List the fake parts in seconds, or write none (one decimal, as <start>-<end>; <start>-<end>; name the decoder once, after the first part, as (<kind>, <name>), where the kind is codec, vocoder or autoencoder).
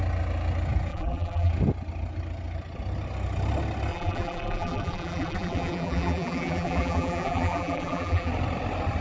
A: 0.9-1.5 (vocoder, BigVGAN v2); 3.9-8.3